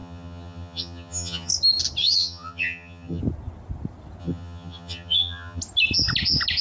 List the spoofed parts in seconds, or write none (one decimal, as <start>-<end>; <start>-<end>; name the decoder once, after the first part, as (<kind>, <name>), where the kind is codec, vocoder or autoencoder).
0.0-1.5 (vocoder, HiFi-GAN); 2.0-3.2; 4.2-5.6